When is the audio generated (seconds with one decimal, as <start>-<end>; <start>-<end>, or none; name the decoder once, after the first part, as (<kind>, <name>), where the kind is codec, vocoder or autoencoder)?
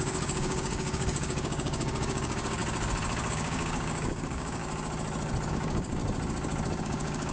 0.0-2.6 (codec, DAC); 3.3-4.6; 5.5-6.0; 6.8-7.3